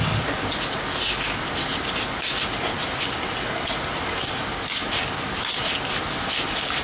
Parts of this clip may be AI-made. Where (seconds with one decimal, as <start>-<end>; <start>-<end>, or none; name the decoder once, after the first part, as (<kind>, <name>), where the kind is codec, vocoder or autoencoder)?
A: none